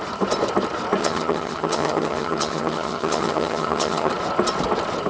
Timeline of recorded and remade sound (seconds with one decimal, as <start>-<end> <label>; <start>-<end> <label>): 0.0-1.0 recorded; 1.0-4.1 remade; 4.1-5.1 recorded